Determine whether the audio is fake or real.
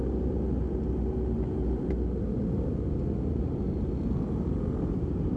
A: real